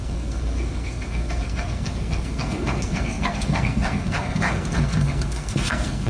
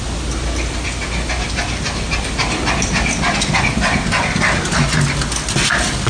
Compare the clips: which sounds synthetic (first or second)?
first